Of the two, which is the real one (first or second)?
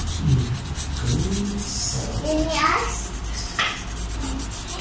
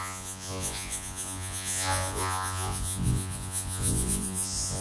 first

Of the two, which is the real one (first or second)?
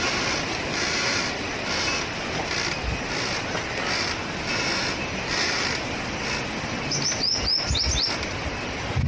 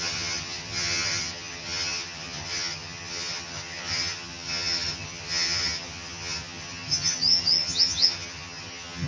first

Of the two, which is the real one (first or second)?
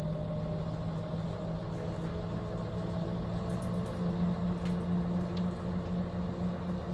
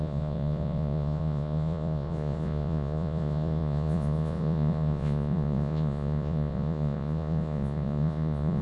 first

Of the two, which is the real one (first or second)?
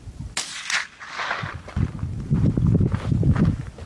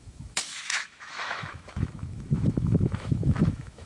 first